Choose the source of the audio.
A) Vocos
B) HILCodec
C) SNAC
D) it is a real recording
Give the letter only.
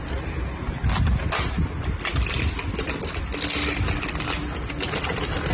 D